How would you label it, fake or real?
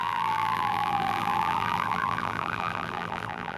fake